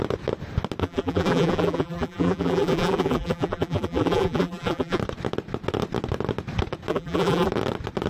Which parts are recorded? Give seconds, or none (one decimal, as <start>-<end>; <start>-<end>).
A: 0.0-0.8; 5.0-6.9; 7.5-8.1